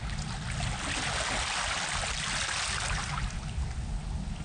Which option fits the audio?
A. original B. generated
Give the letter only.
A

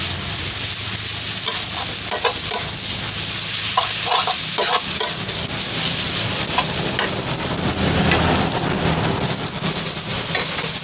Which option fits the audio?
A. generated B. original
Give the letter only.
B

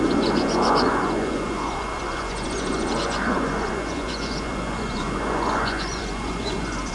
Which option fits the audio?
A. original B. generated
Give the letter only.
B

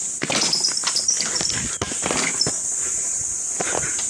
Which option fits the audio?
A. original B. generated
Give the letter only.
A